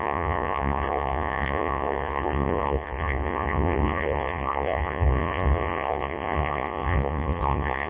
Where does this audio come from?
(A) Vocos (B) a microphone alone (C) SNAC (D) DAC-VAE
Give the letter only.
A